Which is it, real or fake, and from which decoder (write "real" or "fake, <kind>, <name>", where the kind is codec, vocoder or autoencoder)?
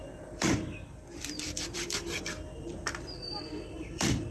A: fake, vocoder, BigVGAN v2